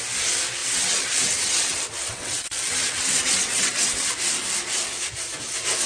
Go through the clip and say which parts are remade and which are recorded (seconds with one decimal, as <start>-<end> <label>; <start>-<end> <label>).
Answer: 0.0-0.6 recorded; 0.6-4.1 remade; 4.1-5.9 recorded

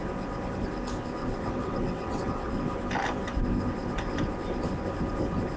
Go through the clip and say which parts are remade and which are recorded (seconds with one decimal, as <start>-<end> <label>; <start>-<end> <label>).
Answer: 0.0-1.2 recorded; 1.2-2.6 remade; 2.6-5.6 recorded

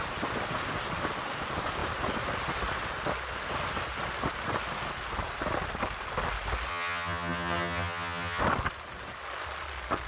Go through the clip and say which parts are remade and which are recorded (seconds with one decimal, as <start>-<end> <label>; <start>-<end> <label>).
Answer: 0.0-6.7 recorded; 6.7-8.4 remade; 8.4-10.1 recorded

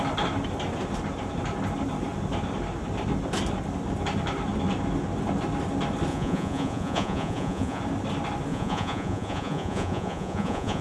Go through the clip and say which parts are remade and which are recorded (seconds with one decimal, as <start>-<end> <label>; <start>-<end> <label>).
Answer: 0.0-6.1 recorded; 6.1-7.8 remade; 7.8-8.5 recorded; 8.5-10.8 remade

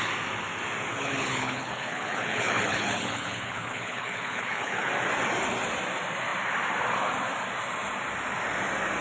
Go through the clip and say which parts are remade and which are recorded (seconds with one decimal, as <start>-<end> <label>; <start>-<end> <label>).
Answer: 0.0-0.9 recorded; 0.9-4.9 remade; 4.9-9.0 recorded

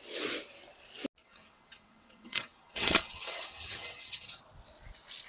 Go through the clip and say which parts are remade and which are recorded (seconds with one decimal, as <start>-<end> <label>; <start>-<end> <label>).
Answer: 0.0-1.2 recorded; 1.2-4.4 remade; 4.4-5.3 recorded

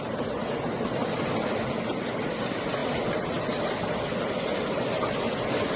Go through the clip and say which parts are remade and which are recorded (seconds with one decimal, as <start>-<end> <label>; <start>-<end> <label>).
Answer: 0.0-5.8 recorded

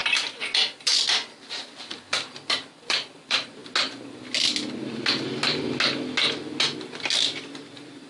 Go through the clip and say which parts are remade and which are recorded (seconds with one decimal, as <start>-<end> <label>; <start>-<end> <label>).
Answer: 0.0-1.0 recorded; 1.0-3.6 remade; 3.6-8.1 recorded